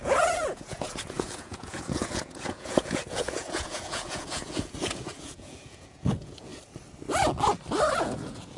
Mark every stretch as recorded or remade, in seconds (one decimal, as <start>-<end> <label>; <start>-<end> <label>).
0.0-6.5 remade; 6.5-8.0 recorded; 8.0-8.6 remade